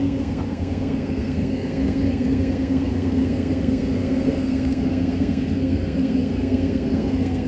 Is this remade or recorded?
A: remade